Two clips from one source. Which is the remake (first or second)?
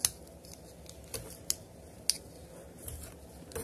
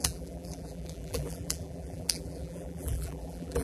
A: second